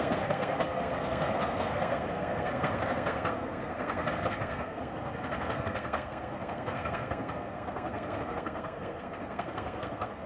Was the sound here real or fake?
fake